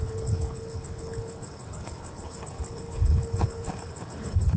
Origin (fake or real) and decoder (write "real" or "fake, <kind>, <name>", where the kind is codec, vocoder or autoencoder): fake, codec, HILCodec